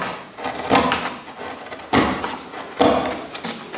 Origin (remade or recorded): recorded